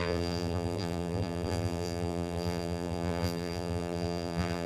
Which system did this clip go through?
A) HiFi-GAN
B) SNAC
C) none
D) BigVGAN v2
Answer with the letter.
D